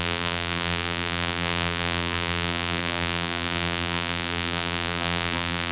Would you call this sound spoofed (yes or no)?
yes